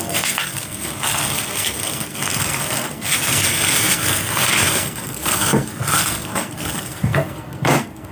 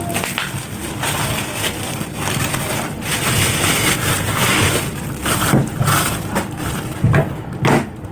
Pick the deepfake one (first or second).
first